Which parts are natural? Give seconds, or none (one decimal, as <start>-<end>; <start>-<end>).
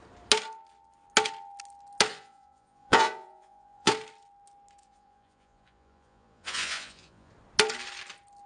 0.0-2.1; 3.9-4.8; 7.3-8.5